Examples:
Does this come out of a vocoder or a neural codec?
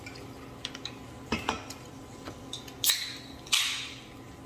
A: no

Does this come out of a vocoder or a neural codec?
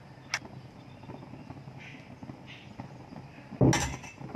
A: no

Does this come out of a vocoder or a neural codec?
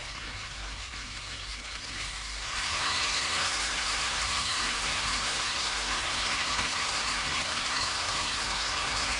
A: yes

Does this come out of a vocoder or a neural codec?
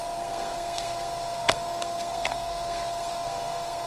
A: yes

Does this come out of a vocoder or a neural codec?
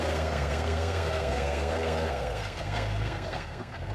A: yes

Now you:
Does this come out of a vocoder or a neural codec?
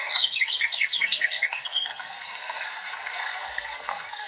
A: yes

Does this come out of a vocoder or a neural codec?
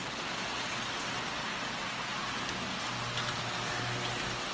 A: no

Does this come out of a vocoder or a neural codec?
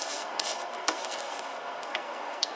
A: yes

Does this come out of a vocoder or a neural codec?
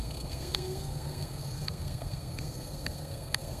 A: yes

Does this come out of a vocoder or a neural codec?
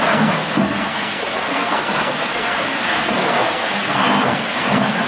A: yes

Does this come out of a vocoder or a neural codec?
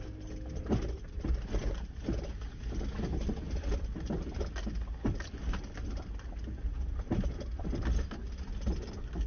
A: no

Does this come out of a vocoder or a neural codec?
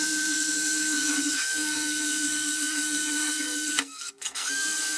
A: yes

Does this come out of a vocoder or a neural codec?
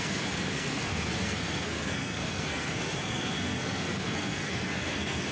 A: yes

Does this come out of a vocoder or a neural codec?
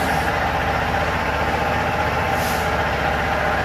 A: no